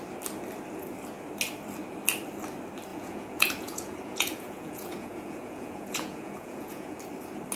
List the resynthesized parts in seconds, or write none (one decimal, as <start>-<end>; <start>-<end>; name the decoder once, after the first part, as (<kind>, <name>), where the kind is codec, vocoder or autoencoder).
2.9-7.0 (vocoder, Vocos)